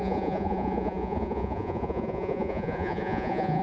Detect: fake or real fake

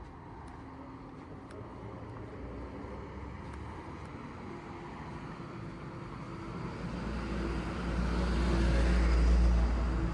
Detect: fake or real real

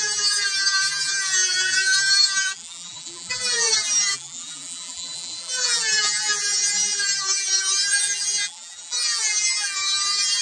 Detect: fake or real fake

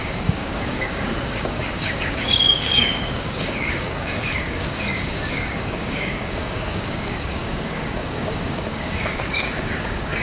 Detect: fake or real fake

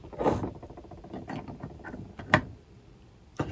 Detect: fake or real fake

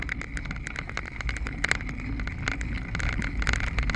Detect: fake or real real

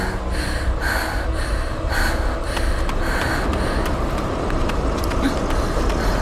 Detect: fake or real real